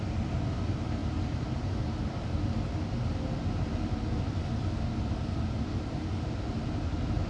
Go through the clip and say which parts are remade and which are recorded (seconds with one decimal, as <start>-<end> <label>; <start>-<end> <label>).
0.0-7.3 recorded